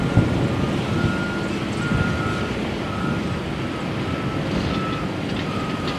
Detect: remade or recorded recorded